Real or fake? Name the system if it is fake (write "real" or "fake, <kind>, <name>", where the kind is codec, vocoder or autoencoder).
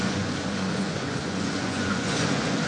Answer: fake, vocoder, Vocos